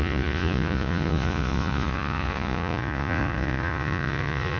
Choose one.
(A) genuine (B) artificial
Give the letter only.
B